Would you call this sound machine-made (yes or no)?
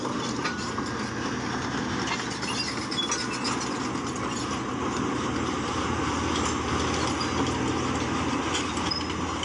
no